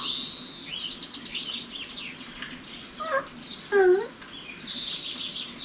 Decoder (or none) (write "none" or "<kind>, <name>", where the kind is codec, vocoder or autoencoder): none